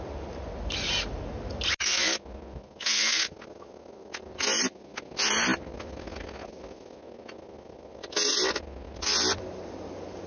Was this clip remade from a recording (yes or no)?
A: no